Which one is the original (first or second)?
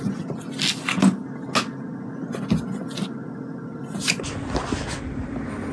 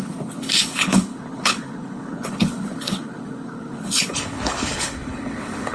first